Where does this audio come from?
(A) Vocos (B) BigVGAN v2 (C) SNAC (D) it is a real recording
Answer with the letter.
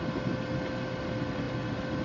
D